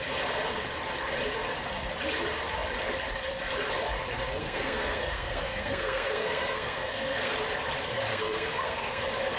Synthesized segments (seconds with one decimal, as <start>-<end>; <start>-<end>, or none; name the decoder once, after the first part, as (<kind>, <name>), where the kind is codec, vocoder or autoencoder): 4.4-7.3 (codec, SNAC); 8.1-9.0